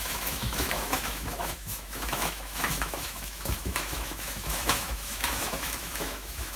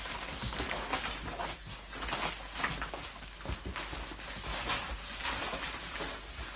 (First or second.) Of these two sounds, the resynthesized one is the first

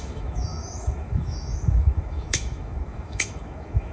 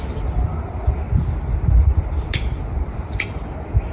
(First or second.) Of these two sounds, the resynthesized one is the first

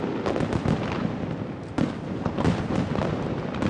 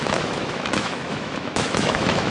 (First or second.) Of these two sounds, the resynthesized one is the second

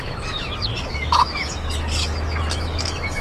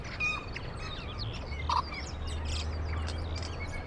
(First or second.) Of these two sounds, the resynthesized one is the first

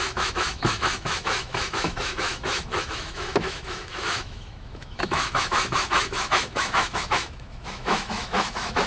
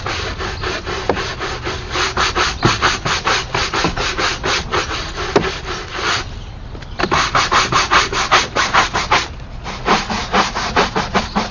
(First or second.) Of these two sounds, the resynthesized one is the first